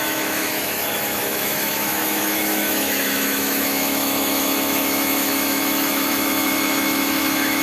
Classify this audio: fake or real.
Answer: fake